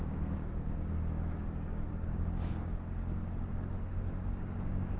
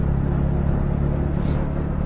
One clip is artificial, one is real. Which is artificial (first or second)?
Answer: first